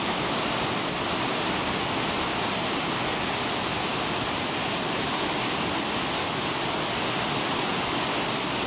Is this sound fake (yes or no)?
no